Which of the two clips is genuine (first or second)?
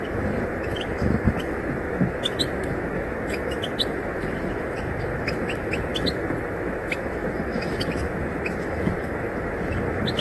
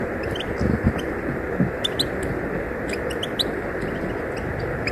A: second